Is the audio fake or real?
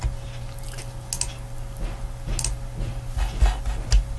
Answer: real